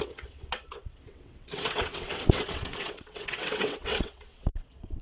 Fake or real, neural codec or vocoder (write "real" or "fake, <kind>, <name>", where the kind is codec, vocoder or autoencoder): fake, vocoder, WaveNeXt